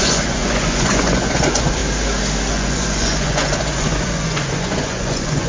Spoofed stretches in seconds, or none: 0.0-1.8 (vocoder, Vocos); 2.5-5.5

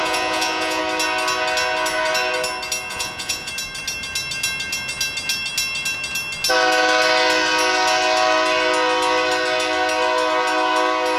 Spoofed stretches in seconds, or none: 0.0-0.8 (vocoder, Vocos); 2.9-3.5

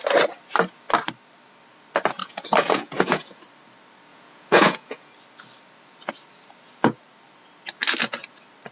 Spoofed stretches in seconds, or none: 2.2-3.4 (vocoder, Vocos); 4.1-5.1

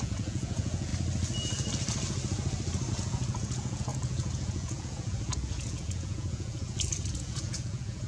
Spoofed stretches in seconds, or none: 0.0-0.9 (vocoder, Vocos); 2.9-8.1

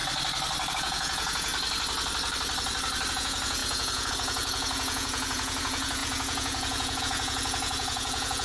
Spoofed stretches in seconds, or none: 0.7-1.5 (vocoder, Vocos); 3.1-8.4

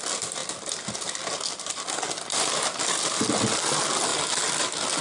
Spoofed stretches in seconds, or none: none